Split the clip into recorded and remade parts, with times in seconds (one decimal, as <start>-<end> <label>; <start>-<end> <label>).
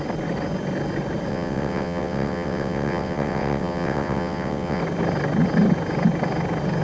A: 0.0-1.3 recorded; 1.3-4.8 remade; 4.8-6.8 recorded